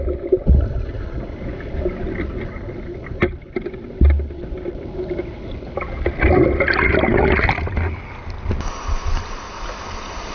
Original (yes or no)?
yes